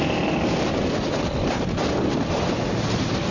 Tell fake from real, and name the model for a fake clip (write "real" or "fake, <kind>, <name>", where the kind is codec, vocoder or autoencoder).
fake, vocoder, BigVGAN v2